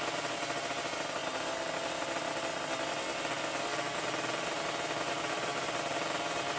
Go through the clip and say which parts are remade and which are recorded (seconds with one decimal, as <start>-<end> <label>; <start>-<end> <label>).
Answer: 0.0-1.2 remade; 1.2-5.2 recorded; 5.2-6.6 remade